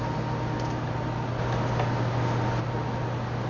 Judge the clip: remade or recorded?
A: recorded